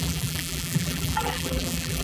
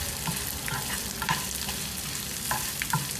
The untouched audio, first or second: second